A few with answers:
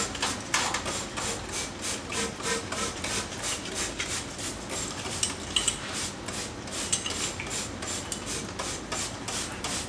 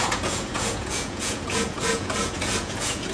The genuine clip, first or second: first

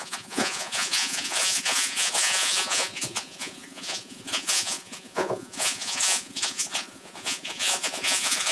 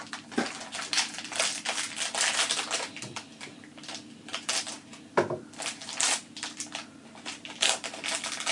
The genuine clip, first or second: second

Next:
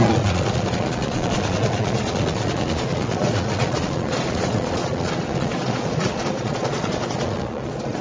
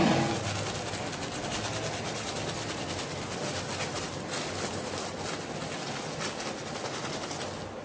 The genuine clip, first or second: second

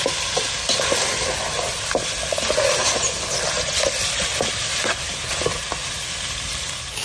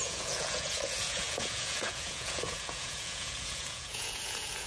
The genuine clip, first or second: first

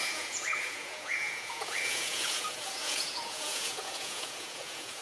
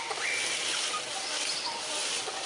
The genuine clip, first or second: second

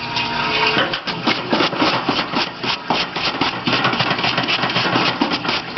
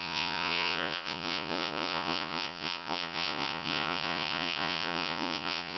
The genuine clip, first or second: first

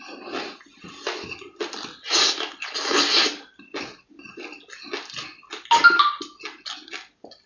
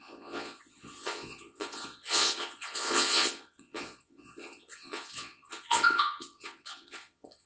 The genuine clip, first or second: first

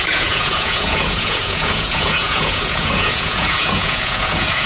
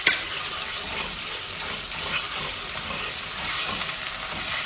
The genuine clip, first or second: second